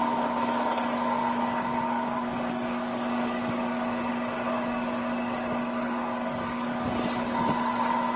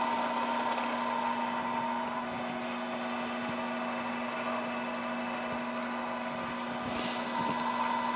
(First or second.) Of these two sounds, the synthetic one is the first